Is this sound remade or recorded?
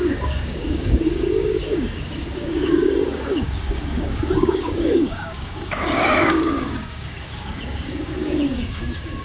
remade